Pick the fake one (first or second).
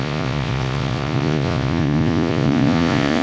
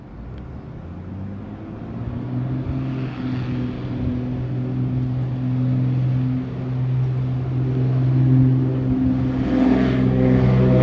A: first